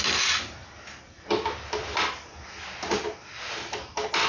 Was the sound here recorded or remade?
recorded